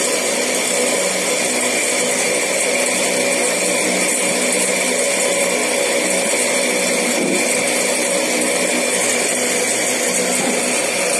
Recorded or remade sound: recorded